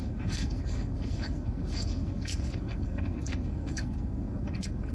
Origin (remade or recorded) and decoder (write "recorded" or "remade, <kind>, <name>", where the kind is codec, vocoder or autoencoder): remade, codec, SNAC